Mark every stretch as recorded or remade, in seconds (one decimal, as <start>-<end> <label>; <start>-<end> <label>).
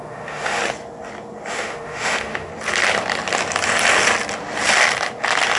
0.0-0.6 remade; 0.6-1.5 recorded; 1.5-2.5 remade; 2.5-5.6 recorded